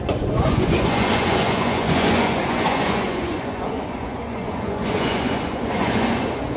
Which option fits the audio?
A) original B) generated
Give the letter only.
B